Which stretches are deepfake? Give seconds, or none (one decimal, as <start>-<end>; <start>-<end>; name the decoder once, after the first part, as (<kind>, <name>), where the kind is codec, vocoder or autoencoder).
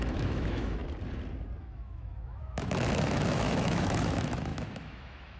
0.0-0.8 (autoencoder, DAC-VAE); 1.6-5.4